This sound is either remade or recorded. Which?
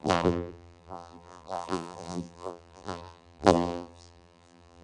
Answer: remade